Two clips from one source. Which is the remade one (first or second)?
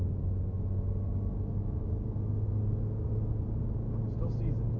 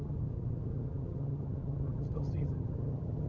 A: second